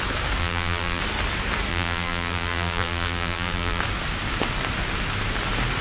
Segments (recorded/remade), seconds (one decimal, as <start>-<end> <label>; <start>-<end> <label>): 0.0-0.4 recorded; 0.4-1.0 remade; 1.0-1.7 recorded; 1.7-3.8 remade; 3.8-5.8 recorded